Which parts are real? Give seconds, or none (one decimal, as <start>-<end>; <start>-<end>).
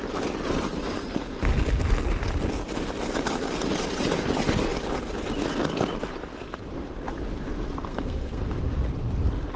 0.0-7.9; 8.4-9.6